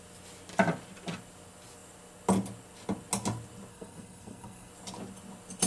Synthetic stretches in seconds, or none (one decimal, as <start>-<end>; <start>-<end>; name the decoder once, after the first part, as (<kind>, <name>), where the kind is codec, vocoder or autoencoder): 3.7-4.7 (codec, SNAC)